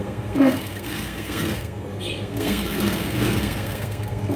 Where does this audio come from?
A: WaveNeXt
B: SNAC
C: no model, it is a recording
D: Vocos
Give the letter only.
B